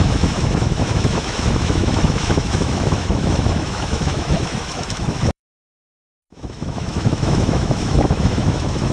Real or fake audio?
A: fake